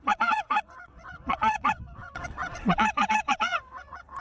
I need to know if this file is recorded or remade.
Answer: remade